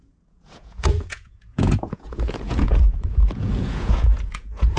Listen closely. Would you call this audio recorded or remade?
remade